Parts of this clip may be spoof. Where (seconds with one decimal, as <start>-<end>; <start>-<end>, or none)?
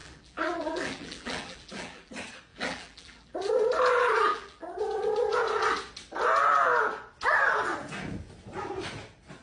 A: 0.0-2.1; 2.5-3.5; 4.3-4.8